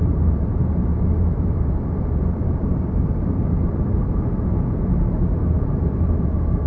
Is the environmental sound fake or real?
fake